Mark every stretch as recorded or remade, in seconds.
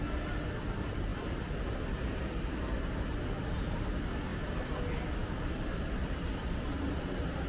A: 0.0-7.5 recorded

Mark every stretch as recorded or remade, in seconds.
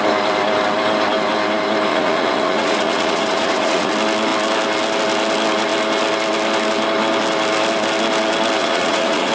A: 0.0-1.9 recorded; 1.9-3.9 remade; 3.9-8.6 recorded; 8.6-9.3 remade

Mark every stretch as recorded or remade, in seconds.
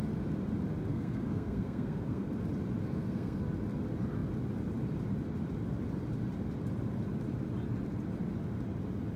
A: 0.0-0.9 recorded; 0.9-2.3 remade; 2.3-2.8 recorded; 2.8-3.4 remade; 3.4-9.2 recorded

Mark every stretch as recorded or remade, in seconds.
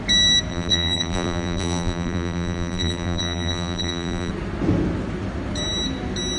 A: 0.0-0.5 recorded; 0.5-4.3 remade; 4.3-6.4 recorded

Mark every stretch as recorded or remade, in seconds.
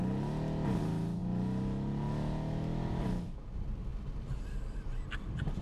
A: 0.0-5.6 recorded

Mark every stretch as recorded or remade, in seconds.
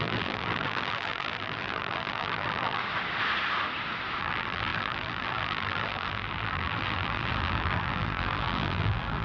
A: 0.0-2.8 remade; 2.8-4.2 recorded; 4.2-9.2 remade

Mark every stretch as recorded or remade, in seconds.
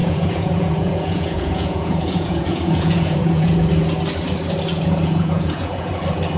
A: 0.0-3.7 remade; 3.7-4.7 recorded; 4.7-5.9 remade; 5.9-6.4 recorded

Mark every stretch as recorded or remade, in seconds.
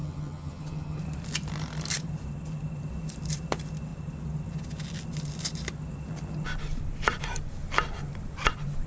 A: 0.0-1.0 remade; 1.0-8.9 recorded